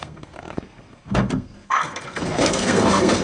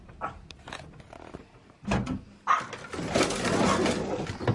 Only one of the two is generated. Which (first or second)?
first